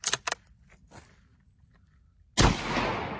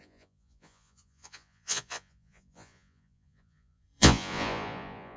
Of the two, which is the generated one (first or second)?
second